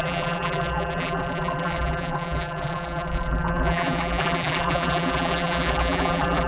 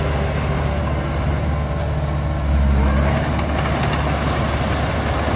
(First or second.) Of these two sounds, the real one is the second